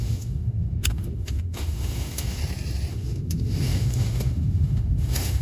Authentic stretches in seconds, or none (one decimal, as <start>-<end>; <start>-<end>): 2.4-2.9